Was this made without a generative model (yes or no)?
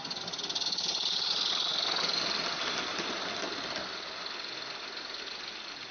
yes